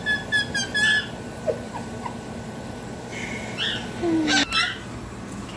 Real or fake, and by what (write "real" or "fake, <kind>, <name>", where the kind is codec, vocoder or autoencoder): real